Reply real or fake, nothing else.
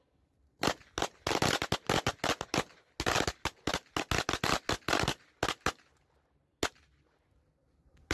real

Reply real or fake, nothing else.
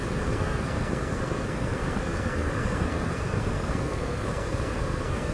fake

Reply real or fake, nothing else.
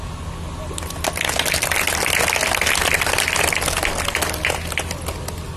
real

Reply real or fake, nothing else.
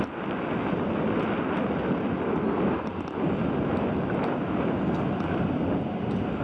real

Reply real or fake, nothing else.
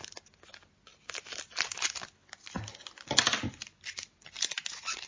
real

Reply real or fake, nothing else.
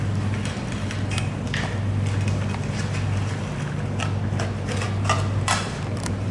real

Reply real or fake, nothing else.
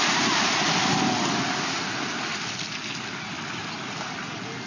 real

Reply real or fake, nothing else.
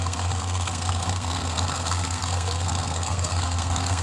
fake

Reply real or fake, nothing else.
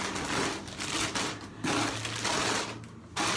real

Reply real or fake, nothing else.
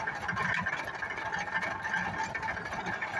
real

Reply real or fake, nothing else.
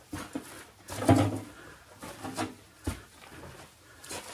real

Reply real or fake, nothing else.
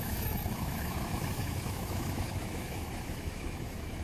fake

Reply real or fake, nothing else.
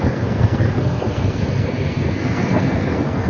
fake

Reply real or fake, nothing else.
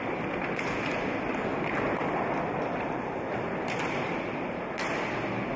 real